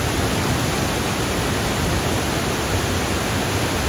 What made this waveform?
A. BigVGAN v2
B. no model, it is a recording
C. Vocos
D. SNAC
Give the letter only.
B